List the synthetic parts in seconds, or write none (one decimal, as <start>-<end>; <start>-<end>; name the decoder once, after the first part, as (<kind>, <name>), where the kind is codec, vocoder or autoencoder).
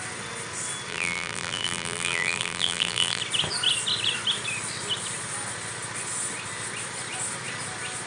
0.9-3.2 (vocoder, BigVGAN v2)